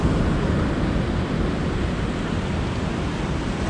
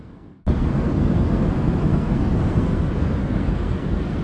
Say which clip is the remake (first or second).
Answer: second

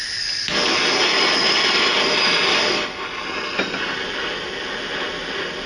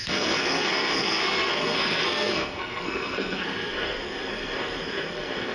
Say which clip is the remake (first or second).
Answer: second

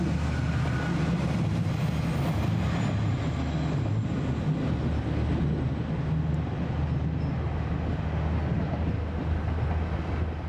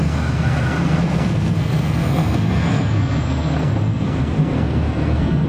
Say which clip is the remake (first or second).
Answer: second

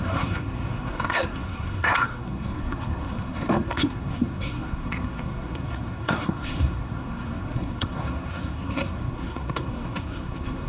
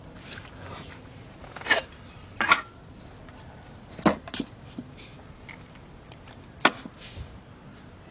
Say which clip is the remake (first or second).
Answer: first